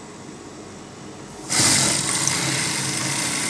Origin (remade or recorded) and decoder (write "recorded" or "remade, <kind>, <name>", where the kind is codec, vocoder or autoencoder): recorded